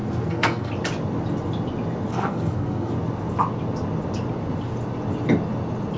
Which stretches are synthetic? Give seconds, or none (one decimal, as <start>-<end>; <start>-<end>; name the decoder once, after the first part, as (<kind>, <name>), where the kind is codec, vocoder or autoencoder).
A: 0.0-0.7 (codec, SNAC); 2.1-2.9